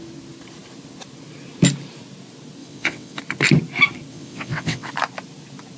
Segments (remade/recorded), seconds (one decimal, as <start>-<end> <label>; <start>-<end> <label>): 0.0-2.6 recorded; 2.6-3.2 remade; 3.2-4.1 recorded; 4.1-4.9 remade; 4.9-5.8 recorded